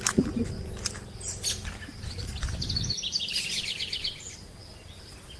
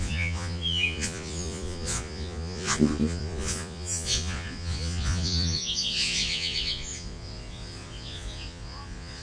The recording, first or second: first